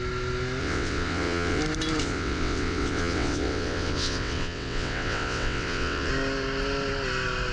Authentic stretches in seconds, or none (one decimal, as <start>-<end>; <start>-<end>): 0.0-0.6; 1.6-2.0; 6.1-7.5